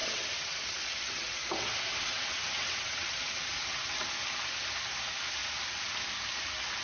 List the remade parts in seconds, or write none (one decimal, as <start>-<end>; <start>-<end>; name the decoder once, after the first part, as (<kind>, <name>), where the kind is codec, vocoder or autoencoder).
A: 0.0-4.1 (vocoder, WaveNeXt)